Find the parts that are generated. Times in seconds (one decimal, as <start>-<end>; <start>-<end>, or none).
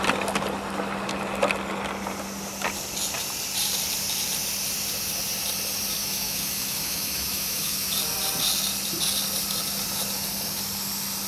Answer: 6.0-7.9